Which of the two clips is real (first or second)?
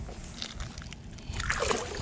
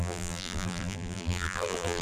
first